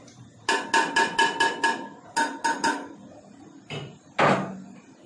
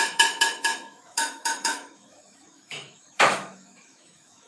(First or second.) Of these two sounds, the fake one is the second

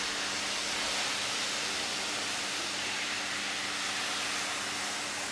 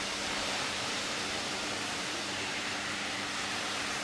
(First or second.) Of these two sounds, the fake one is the second